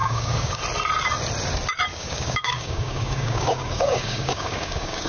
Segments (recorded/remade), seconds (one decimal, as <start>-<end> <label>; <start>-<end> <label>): 0.0-0.6 remade; 0.6-1.9 recorded; 1.9-5.1 remade